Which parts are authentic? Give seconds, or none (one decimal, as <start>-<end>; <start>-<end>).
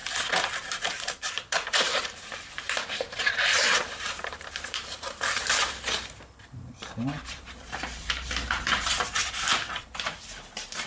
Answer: 0.0-1.3